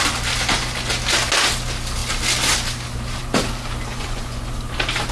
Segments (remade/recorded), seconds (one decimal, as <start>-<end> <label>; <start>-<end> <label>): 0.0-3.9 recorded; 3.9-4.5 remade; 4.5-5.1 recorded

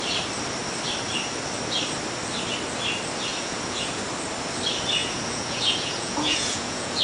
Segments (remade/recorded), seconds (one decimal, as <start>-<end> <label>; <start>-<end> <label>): 0.0-3.3 recorded; 3.3-4.0 remade; 4.0-5.0 recorded; 5.0-7.0 remade

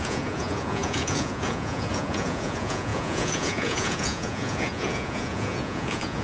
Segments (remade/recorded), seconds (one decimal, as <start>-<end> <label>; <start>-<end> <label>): 0.0-6.2 remade